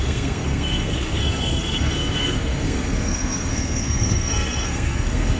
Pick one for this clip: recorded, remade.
remade